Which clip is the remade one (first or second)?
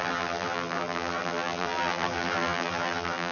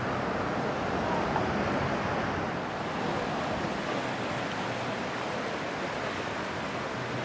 first